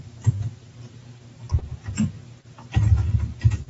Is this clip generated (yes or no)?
yes